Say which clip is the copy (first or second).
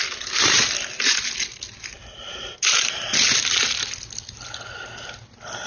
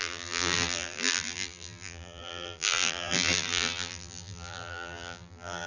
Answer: second